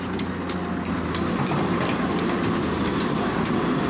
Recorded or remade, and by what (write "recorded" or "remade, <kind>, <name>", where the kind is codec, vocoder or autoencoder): recorded